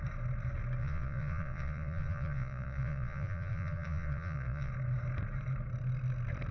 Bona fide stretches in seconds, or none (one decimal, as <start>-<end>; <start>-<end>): 0.0-0.8; 4.7-6.5